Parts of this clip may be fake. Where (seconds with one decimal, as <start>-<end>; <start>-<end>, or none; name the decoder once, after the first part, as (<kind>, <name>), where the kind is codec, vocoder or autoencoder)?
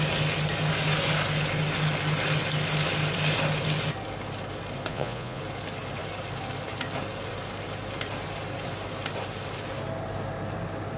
4.9-5.4 (vocoder, Vocos)